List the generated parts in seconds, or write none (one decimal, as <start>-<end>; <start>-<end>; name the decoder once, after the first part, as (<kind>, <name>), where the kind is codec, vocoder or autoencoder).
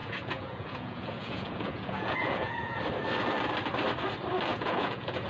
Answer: 0.0-2.8 (vocoder, Vocos); 4.5-5.3